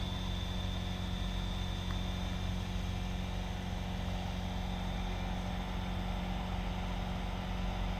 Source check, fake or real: real